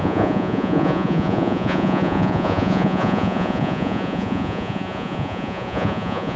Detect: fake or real fake